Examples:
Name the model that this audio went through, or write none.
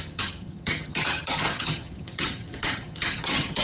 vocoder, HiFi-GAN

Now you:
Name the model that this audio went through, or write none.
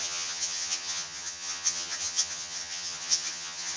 vocoder, HiFi-GAN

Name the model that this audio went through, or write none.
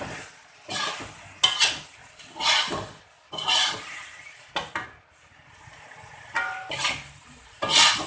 none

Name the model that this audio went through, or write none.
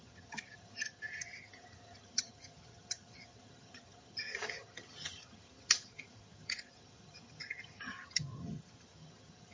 vocoder, HiFi-GAN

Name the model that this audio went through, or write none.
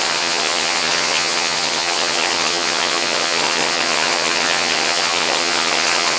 vocoder, HiFi-GAN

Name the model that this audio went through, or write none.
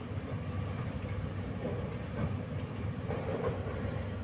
none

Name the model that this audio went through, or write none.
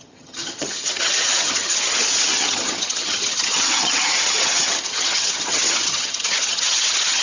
vocoder, HiFi-GAN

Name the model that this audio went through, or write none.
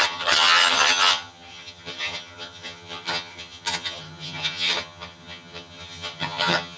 vocoder, HiFi-GAN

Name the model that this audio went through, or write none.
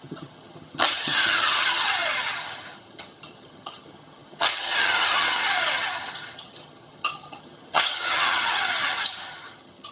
vocoder, HiFi-GAN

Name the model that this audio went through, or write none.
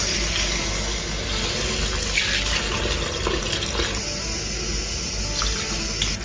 none